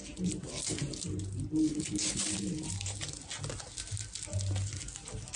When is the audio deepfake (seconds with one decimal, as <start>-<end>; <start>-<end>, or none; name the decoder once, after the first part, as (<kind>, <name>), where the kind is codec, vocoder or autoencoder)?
1.7-2.2 (codec, HILCodec)